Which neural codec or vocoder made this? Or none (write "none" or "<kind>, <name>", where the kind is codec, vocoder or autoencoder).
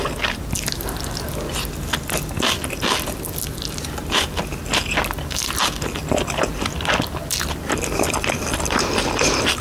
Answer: none